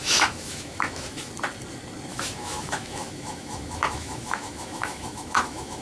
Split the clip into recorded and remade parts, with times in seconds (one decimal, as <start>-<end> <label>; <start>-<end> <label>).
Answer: 0.0-1.3 remade; 1.3-2.1 recorded; 2.1-5.8 remade